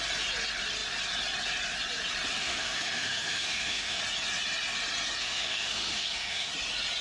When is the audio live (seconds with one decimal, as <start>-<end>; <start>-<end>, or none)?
0.0-2.4; 4.0-5.2; 6.5-7.0